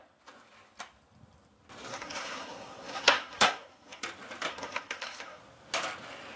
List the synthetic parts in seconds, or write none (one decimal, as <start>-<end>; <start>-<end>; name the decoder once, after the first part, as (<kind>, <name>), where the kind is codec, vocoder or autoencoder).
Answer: 1.9-4.0 (codec, SNAC); 4.5-5.4

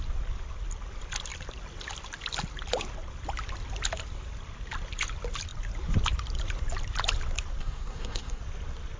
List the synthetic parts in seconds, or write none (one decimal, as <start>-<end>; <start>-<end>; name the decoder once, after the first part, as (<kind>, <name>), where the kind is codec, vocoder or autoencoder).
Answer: 7.6-8.4 (codec, SNAC)